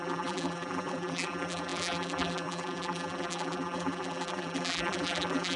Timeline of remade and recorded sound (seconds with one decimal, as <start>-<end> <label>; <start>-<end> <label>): 0.0-5.6 remade

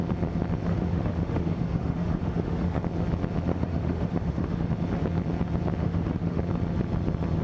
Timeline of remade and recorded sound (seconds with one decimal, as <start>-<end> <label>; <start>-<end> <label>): 0.0-0.7 recorded; 0.7-2.8 remade; 2.8-3.5 recorded; 3.5-4.7 remade; 4.7-5.8 recorded; 5.8-6.4 remade; 6.4-7.4 recorded

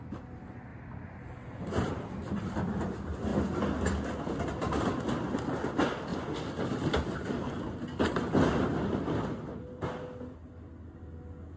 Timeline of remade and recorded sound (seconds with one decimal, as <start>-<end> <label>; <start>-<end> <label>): 0.0-6.1 recorded; 6.1-7.6 remade; 7.6-11.6 recorded

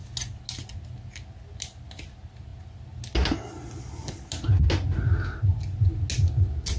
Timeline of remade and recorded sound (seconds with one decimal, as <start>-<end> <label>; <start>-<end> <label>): 0.0-6.8 recorded